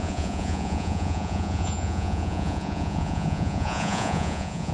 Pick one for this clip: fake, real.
fake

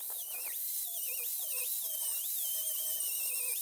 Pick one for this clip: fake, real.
fake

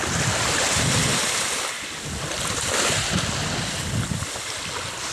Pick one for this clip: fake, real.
real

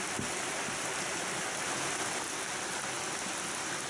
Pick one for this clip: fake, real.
real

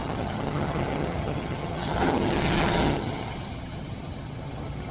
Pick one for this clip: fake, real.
fake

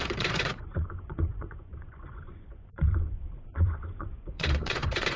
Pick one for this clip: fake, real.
fake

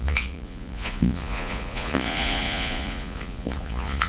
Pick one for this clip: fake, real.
fake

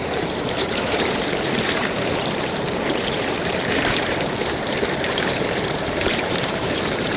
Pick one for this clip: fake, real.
fake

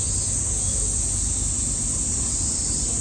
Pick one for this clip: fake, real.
real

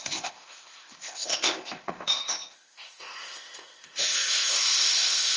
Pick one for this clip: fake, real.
fake